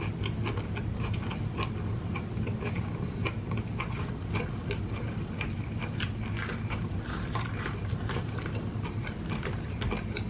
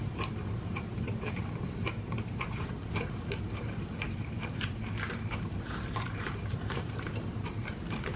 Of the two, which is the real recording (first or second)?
first